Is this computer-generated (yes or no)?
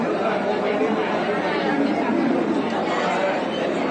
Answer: no